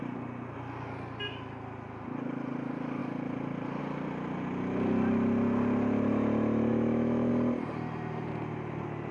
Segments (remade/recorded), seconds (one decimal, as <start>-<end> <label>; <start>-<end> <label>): 0.0-6.7 recorded; 6.7-7.3 remade; 7.3-9.1 recorded